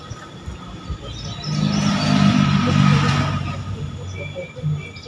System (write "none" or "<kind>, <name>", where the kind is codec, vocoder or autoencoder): none